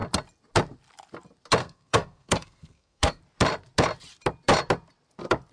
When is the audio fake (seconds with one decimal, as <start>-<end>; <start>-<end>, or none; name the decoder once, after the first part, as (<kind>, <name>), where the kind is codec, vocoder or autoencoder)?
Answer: 1.6-3.2 (codec, SNAC)